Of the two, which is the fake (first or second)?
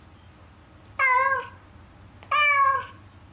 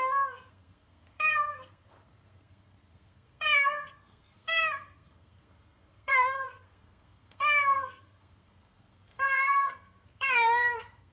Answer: second